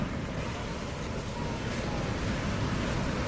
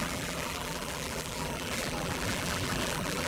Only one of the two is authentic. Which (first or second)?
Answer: first